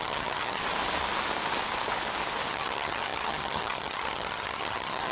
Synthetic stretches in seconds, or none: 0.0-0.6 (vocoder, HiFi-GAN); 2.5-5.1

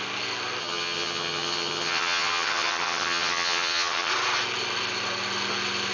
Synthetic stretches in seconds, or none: 0.6-4.1 (vocoder, HiFi-GAN)

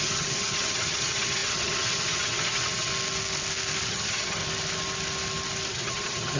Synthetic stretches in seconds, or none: 0.0-2.9 (vocoder, HiFi-GAN); 3.9-4.4; 5.7-6.4

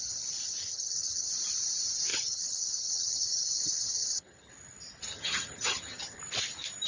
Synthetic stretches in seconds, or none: 0.6-1.3 (vocoder, HiFi-GAN); 2.1-4.5; 5.1-6.2

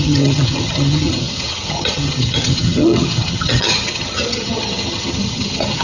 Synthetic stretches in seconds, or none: 0.0-5.8 (vocoder, HiFi-GAN)

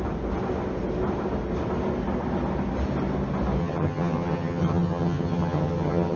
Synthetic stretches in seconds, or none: 3.6-6.2 (vocoder, HiFi-GAN)

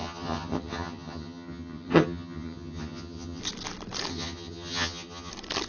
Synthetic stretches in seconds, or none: 0.0-3.4 (vocoder, HiFi-GAN); 4.1-5.3

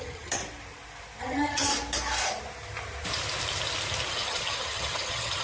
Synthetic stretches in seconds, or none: 0.0-0.4 (vocoder, HiFi-GAN); 1.2-1.7; 4.1-5.4